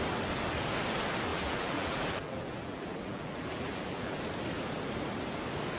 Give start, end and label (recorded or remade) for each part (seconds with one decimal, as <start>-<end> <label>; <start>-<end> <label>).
0.0-1.3 recorded; 1.3-4.2 remade; 4.2-5.8 recorded

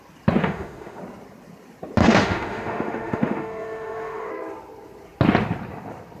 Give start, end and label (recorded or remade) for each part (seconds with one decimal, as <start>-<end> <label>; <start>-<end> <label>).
0.0-0.4 recorded; 0.4-1.0 remade; 1.0-2.0 recorded; 2.0-4.3 remade; 4.3-6.2 recorded

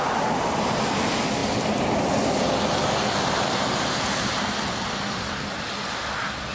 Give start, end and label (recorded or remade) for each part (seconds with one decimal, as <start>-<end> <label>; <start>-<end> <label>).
0.0-6.5 recorded

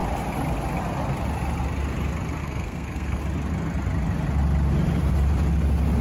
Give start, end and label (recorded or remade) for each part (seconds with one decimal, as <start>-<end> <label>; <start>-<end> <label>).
0.0-2.4 recorded; 2.4-3.2 remade; 3.2-6.0 recorded

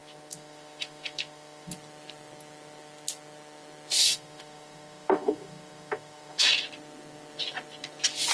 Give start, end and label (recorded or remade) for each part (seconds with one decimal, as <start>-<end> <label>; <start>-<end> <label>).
0.0-1.7 remade; 1.7-4.0 recorded; 4.0-6.5 remade; 6.5-8.3 recorded

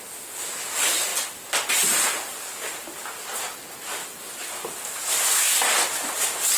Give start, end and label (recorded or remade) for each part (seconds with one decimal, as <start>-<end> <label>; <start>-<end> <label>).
0.0-4.0 recorded; 4.0-6.6 remade